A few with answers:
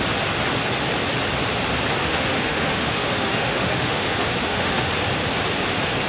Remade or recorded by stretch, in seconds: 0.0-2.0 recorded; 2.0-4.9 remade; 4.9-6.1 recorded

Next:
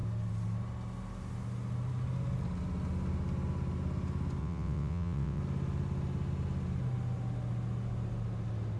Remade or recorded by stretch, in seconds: 0.0-4.4 recorded; 4.4-5.4 remade; 5.4-8.8 recorded

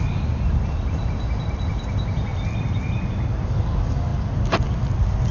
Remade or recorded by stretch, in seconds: 0.0-5.3 recorded

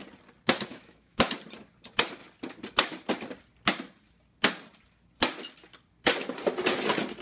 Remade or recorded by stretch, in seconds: 0.0-0.7 recorded; 0.7-1.3 remade; 1.3-7.2 recorded

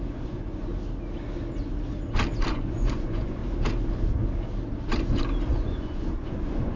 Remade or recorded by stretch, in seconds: 0.0-0.7 remade; 0.7-2.5 recorded; 2.5-3.4 remade; 3.4-5.5 recorded; 5.5-6.8 remade

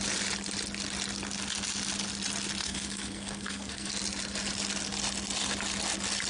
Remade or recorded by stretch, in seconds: 0.0-2.6 recorded; 2.6-3.9 remade; 3.9-6.3 recorded

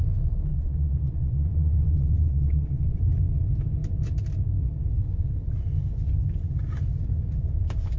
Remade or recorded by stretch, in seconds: 0.0-0.5 recorded; 0.5-3.0 remade; 3.0-8.0 recorded